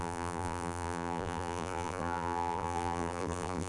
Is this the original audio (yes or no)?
no